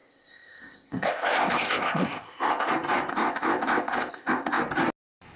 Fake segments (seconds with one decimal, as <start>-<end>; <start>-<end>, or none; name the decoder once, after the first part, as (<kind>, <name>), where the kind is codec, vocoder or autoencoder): 0.0-2.7 (codec, ZipCodec); 3.1-4.6